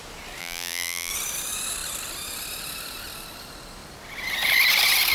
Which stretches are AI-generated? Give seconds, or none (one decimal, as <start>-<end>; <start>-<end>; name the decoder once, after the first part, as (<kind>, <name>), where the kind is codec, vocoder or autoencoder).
0.4-1.1 (vocoder, BigVGAN v2)